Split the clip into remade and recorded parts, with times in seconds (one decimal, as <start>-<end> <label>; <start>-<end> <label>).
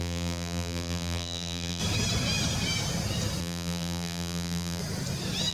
0.0-1.8 remade; 1.8-3.4 recorded; 3.4-4.8 remade; 4.8-5.5 recorded